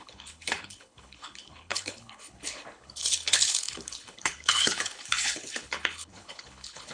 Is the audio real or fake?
fake